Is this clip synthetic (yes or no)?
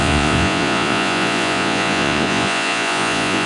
yes